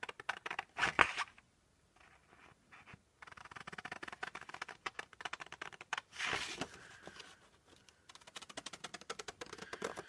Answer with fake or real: real